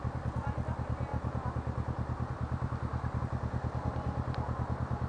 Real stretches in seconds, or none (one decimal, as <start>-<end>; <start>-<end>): 0.0-5.1